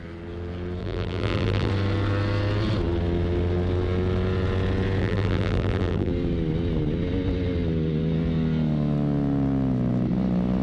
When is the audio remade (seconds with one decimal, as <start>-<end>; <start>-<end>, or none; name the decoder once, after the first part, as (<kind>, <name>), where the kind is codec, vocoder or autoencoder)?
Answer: 0.8-1.7 (vocoder, BigVGAN v2); 5.0-6.1